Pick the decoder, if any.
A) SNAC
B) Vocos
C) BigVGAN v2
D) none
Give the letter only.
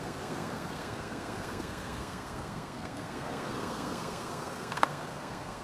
A